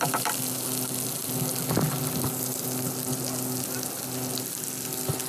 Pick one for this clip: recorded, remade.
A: recorded